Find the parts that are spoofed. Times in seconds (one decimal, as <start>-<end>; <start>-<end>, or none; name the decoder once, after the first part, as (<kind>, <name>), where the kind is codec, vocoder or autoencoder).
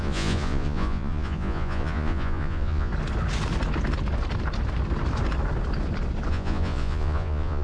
0.0-2.9 (vocoder, Vocos); 6.3-7.6